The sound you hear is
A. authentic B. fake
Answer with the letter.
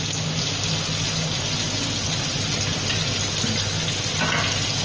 A